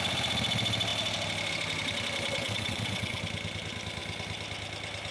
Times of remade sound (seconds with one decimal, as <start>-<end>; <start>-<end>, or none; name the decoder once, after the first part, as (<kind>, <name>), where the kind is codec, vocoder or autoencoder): 2.4-3.2 (vocoder, WaveNeXt)

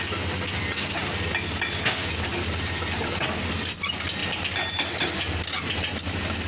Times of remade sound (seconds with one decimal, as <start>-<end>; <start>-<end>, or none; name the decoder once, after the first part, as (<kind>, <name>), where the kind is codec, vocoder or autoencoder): none

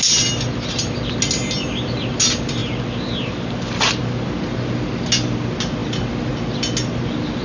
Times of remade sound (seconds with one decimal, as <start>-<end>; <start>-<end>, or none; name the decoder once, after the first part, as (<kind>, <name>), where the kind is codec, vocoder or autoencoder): none